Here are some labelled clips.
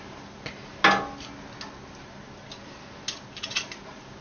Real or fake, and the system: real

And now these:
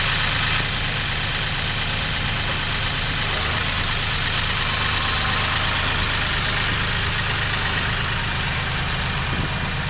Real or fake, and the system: real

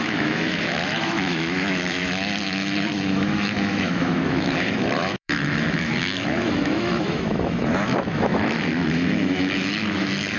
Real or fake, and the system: fake, autoencoder, DAC-VAE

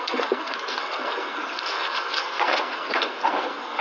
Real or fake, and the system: fake, codec, SNAC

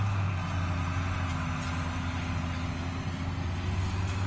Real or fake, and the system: real